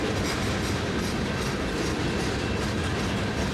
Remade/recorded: recorded